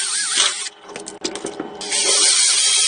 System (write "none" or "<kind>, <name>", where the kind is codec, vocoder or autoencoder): none